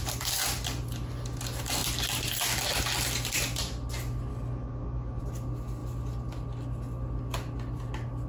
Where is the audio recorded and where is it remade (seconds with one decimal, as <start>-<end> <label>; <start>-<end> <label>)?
0.0-4.3 recorded; 4.3-5.2 remade; 5.2-8.3 recorded